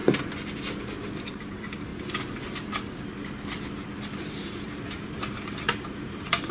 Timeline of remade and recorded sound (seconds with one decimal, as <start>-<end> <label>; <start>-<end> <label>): 0.0-1.3 recorded; 1.3-1.9 remade; 1.9-4.2 recorded; 4.2-6.5 remade